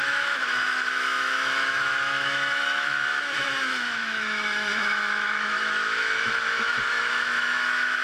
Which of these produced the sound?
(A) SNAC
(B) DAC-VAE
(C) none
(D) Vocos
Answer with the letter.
B